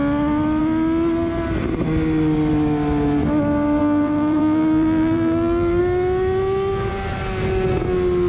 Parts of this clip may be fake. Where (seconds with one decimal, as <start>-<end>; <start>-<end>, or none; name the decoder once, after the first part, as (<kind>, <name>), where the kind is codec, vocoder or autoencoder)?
3.8-5.8 (vocoder, BigVGAN v2)